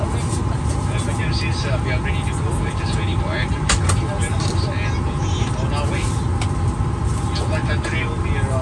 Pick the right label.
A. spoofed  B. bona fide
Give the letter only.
B